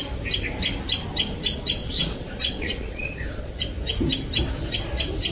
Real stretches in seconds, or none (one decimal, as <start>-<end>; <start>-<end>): 0.0-1.8; 3.5-5.3